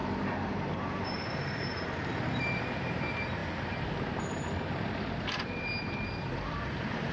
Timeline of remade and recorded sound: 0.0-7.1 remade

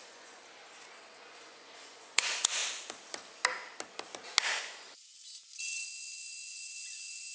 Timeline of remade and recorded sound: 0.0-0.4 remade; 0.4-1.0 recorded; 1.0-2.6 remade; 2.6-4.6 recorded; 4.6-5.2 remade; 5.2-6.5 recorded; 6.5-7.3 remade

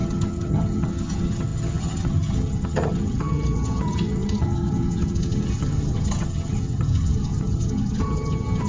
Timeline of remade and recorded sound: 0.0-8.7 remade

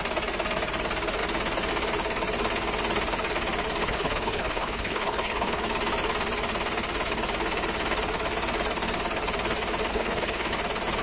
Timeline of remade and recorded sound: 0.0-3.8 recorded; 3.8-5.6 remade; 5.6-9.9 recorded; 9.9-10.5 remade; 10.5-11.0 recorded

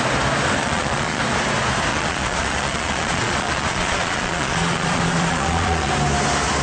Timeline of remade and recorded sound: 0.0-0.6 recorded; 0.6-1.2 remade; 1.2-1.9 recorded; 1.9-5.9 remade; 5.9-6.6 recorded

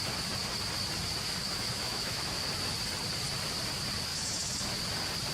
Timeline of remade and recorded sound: 0.0-1.4 recorded; 1.4-2.4 remade; 2.4-4.1 recorded; 4.1-4.8 remade; 4.8-5.3 recorded